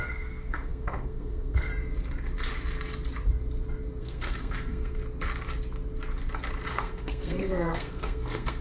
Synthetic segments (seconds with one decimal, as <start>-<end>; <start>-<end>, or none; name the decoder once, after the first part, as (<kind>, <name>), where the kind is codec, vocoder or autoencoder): 0.0-1.7 (codec, SNAC); 4.0-5.0; 6.7-8.6